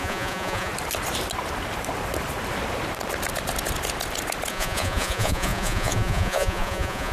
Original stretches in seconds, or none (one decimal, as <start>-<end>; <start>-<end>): 0.7-4.5

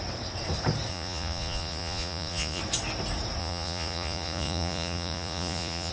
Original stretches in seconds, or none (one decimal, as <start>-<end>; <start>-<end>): 0.0-0.9; 2.6-3.4

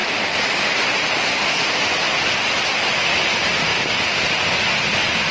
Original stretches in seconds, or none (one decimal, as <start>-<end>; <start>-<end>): 0.6-5.3

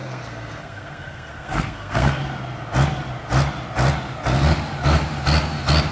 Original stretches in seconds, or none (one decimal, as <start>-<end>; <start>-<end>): 2.2-5.9